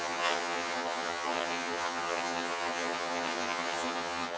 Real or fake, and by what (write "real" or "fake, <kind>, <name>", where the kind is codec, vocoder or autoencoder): fake, vocoder, HiFi-GAN